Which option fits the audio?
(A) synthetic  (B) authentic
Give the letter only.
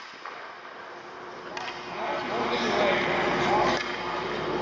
B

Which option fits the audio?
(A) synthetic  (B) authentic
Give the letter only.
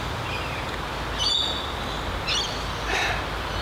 B